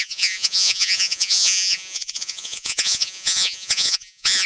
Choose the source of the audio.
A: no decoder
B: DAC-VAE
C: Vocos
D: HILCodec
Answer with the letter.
C